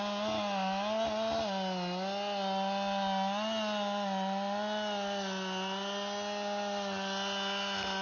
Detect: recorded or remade recorded